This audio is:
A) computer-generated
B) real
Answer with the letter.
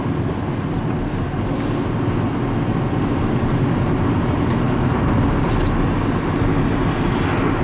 B